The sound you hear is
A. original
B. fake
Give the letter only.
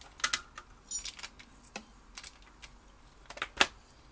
A